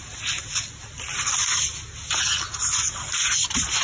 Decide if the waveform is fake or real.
real